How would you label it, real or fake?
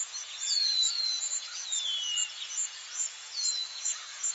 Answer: fake